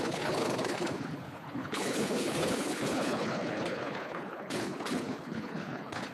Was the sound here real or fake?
fake